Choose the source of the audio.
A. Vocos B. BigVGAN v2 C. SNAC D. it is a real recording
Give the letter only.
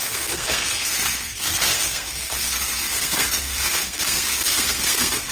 C